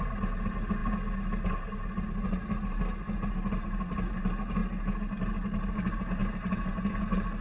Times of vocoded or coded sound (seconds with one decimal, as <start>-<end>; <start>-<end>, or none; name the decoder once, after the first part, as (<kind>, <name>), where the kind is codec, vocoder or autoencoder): none